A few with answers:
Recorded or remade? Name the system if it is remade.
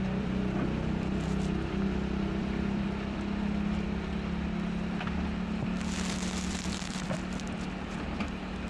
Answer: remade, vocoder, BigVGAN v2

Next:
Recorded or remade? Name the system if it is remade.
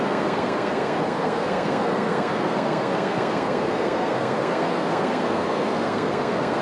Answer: remade, codec, SNAC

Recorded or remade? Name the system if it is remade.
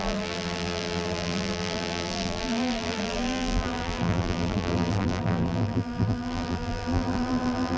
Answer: remade, vocoder, BigVGAN v2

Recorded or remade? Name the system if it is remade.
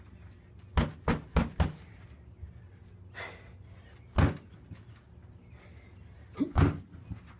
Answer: recorded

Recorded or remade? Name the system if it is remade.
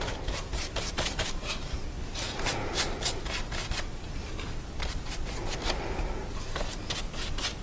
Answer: recorded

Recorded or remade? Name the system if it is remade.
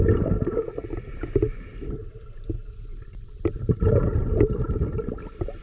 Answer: recorded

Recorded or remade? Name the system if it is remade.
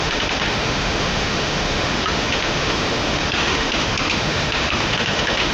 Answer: remade, autoencoder, DAC-VAE